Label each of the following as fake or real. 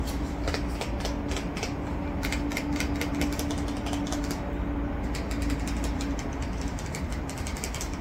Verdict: real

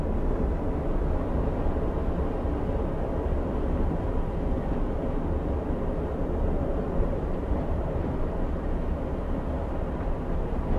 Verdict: real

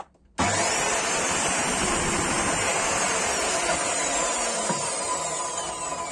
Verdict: real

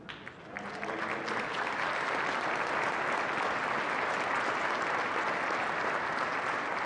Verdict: real